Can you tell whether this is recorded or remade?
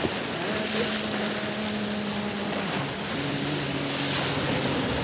recorded